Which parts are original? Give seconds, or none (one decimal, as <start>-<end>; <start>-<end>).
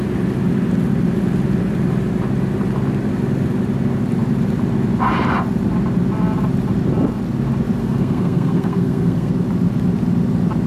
0.0-7.8; 9.3-10.7